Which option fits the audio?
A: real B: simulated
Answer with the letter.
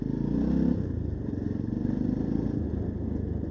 A